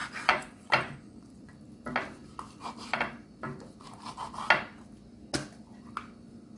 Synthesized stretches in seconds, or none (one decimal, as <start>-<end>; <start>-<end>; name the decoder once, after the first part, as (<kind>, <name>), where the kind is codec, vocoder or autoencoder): 0.0-1.5 (vocoder, Vocos)